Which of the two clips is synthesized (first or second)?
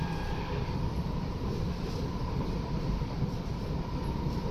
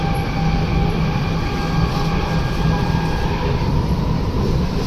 first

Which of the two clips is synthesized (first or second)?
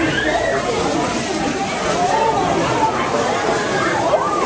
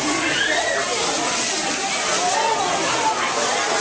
first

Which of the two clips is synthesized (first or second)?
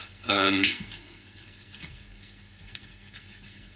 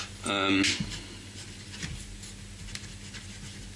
first